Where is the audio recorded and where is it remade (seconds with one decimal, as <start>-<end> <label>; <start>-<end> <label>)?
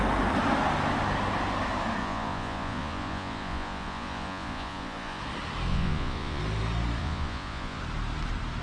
0.0-2.0 recorded; 2.0-5.2 remade; 5.2-5.7 recorded; 5.7-6.4 remade; 6.4-7.0 recorded; 7.0-7.8 remade; 7.8-8.6 recorded